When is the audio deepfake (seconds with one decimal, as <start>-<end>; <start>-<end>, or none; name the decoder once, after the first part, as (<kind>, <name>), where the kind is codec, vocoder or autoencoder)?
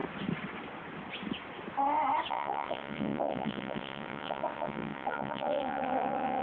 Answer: 2.3-6.4 (vocoder, WaveNeXt)